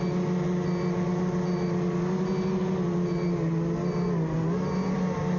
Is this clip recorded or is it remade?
recorded